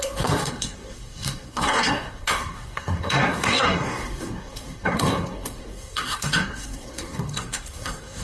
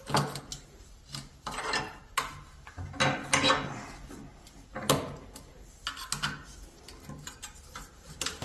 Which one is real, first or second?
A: second